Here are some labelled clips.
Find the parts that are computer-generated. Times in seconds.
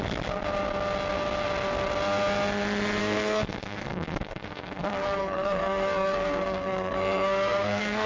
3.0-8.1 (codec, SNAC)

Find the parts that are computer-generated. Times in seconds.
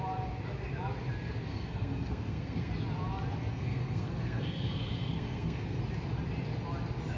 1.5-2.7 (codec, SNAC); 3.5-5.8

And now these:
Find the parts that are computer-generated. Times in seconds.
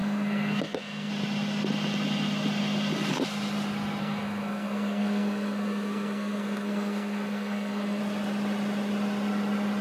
0.0-1.1 (codec, SNAC); 4.0-8.0